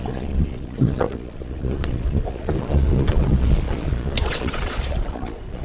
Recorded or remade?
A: remade